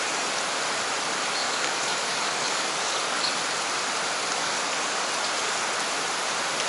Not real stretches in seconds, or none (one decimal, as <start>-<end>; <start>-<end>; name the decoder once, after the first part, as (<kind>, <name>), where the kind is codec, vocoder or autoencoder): 1.4-3.4 (codec, DAC); 4.4-5.1